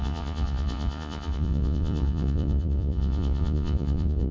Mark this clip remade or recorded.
remade